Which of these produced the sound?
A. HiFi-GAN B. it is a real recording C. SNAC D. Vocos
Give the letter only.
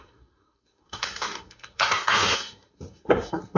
C